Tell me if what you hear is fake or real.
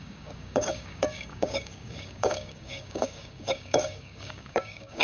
fake